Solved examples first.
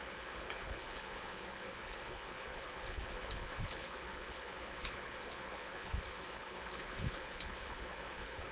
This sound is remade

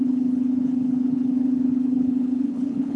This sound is remade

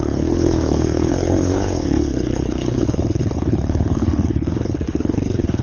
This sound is remade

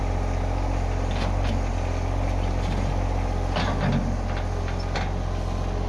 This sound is recorded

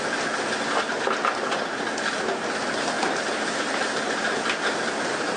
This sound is recorded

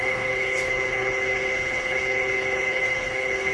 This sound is remade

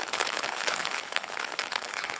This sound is remade